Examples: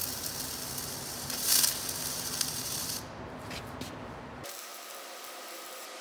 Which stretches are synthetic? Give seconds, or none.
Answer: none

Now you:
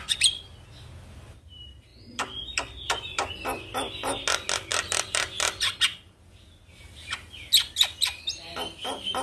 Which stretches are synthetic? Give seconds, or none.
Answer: 1.9-3.3 (vocoder, BigVGAN v2); 4.7-5.6

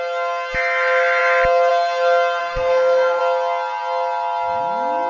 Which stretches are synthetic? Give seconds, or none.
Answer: 2.4-3.2 (codec, SNAC)

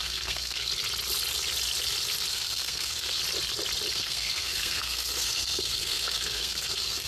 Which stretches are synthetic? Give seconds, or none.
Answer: 0.0-0.7 (codec, SNAC); 2.3-3.2; 3.9-7.1

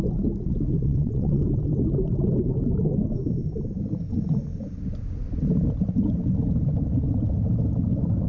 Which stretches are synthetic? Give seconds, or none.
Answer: 0.8-1.4 (vocoder, WaveNeXt)

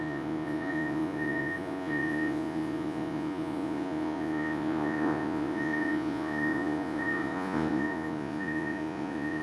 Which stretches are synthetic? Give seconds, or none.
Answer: 0.0-9.4 (vocoder, Vocos)

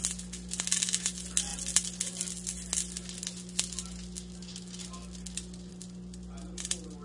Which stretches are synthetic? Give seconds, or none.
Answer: none